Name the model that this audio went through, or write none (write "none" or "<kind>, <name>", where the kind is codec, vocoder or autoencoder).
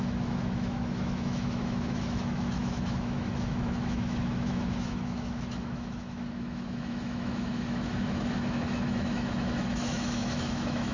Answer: autoencoder, DAC-VAE